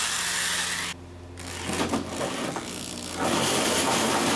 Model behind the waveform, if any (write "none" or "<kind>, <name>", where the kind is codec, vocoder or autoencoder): none